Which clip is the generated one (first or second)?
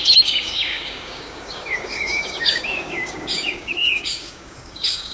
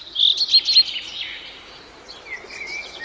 first